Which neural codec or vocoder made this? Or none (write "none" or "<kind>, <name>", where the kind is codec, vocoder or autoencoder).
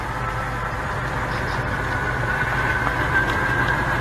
vocoder, BigVGAN v2